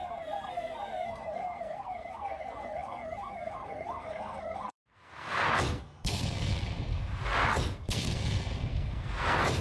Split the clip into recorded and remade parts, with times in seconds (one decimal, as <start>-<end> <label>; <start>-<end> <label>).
0.0-9.6 remade